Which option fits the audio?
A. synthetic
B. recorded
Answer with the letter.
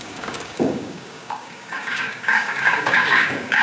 A